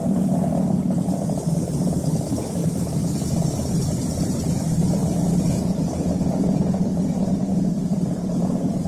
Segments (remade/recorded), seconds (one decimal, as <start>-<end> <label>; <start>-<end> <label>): 0.0-0.5 recorded; 0.5-5.0 remade; 5.0-7.5 recorded; 7.5-8.9 remade